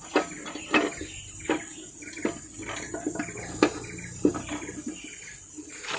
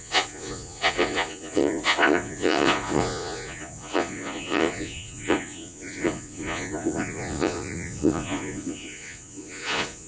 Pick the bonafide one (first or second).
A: first